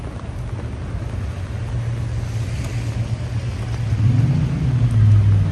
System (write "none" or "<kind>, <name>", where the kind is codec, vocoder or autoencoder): none